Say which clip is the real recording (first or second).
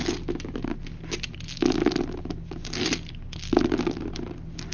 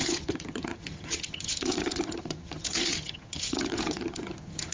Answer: first